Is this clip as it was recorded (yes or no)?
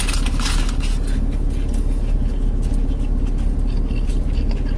yes